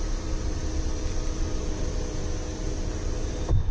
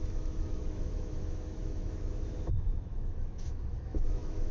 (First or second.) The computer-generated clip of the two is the second